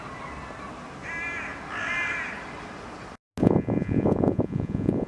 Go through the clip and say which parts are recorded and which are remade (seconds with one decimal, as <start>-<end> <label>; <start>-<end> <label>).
0.0-3.4 recorded; 3.4-5.1 remade